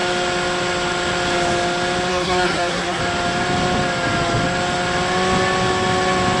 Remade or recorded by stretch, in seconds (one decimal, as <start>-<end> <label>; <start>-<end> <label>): 0.0-2.1 recorded; 2.1-3.0 remade; 3.0-6.4 recorded